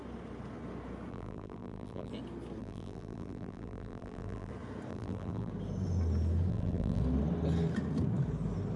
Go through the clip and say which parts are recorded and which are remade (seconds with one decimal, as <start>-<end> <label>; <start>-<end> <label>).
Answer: 0.0-1.1 recorded; 1.1-2.1 remade; 2.1-2.6 recorded; 2.6-4.5 remade; 4.5-4.9 recorded; 4.9-5.5 remade; 5.5-6.5 recorded; 6.5-7.0 remade; 7.0-8.8 recorded